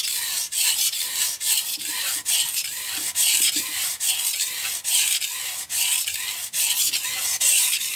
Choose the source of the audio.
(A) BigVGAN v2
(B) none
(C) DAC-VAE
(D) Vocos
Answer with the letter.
B